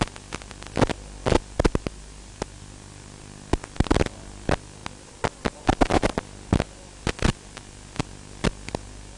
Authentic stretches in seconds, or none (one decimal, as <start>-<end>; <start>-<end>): 0.0-9.2